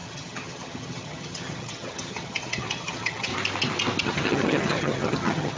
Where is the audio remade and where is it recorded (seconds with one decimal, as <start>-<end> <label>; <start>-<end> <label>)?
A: 0.0-3.3 remade; 3.3-4.0 recorded; 4.0-5.6 remade